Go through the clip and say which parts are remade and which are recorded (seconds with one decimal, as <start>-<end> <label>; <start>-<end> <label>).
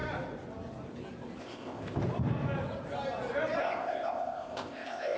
0.0-1.4 recorded; 1.4-2.0 remade; 2.0-3.6 recorded; 3.6-5.2 remade